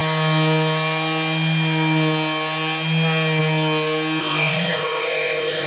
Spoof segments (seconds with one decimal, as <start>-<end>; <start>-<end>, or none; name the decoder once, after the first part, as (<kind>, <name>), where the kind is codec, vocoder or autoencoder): 4.2-5.7 (codec, ZipCodec)